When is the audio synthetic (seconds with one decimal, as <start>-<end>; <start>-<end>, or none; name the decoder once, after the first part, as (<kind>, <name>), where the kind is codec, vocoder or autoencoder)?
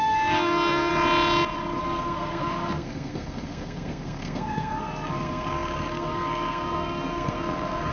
0.0-0.9 (codec, SNAC); 1.8-7.9